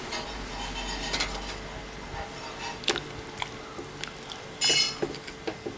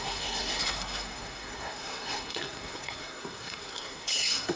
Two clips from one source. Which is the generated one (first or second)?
second